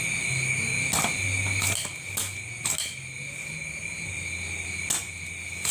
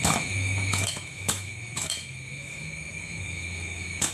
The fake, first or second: second